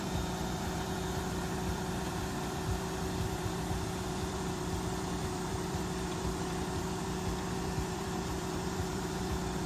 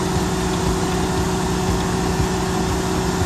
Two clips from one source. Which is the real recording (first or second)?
second